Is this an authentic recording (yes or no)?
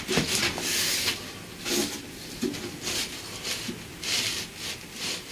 yes